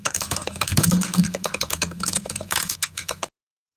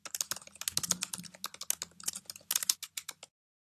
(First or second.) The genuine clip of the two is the second